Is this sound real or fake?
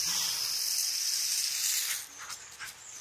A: real